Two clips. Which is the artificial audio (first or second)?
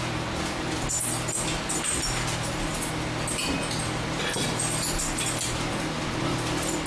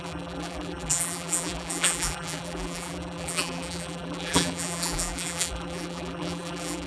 second